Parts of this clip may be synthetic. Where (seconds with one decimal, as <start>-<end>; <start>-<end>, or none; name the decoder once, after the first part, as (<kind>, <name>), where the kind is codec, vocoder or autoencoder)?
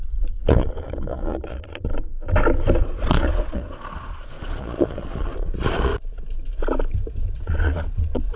0.0-2.1 (vocoder, Vocos); 2.8-5.9; 7.4-8.4